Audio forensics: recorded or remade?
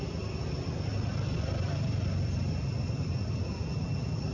recorded